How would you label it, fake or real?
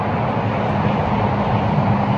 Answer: real